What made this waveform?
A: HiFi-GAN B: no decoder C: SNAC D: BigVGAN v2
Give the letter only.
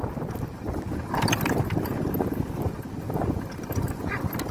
B